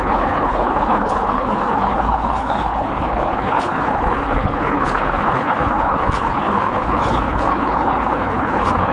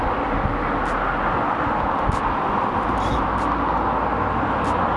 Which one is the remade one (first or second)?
first